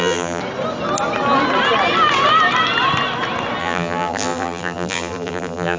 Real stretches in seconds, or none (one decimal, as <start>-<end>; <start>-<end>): 0.4-3.6